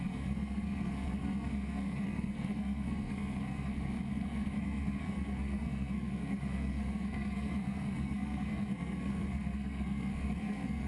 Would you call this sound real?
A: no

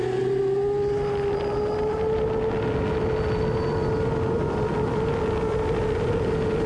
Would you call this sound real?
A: yes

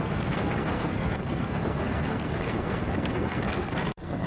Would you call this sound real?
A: no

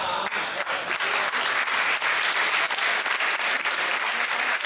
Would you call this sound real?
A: no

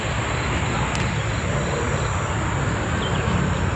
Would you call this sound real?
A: yes